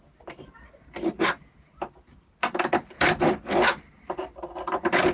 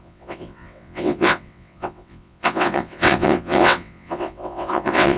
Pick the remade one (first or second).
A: second